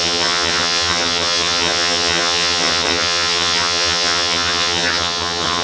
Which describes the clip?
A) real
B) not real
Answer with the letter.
B